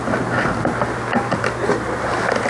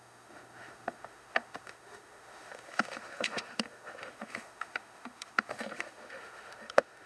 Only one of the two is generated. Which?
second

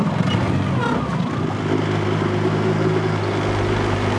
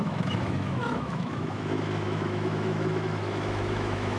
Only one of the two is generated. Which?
second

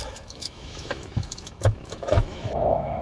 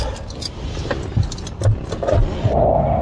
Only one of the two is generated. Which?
first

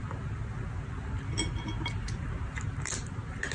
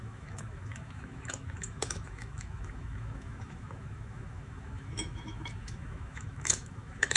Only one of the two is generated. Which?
second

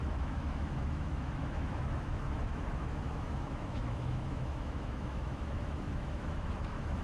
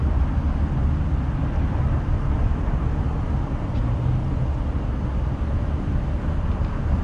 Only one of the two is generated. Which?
first